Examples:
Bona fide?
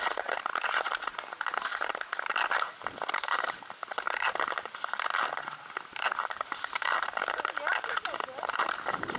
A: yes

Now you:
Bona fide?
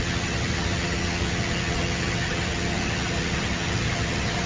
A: no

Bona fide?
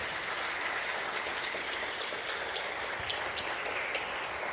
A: yes